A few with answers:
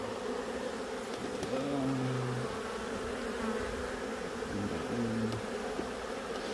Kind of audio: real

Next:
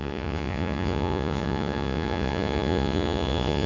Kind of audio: fake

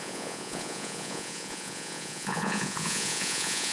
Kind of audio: fake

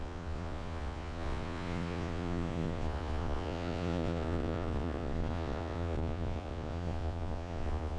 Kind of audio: fake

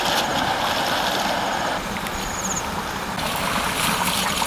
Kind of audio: real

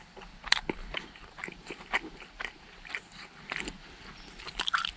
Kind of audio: real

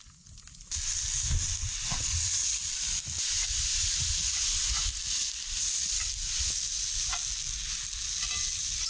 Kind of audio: real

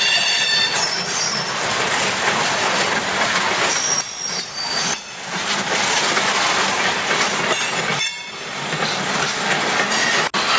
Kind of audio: real